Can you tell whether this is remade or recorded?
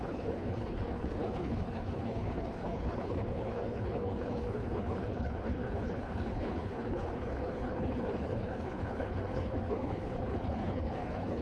remade